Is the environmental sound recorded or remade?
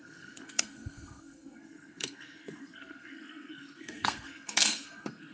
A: remade